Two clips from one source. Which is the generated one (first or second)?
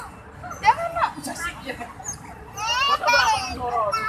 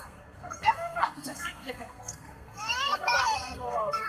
second